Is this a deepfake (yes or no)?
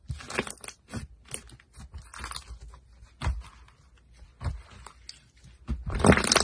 no